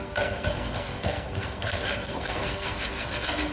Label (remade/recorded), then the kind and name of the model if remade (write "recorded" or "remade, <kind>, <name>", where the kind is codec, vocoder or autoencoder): remade, codec, SNAC